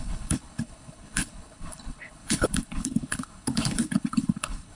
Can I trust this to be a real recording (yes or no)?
no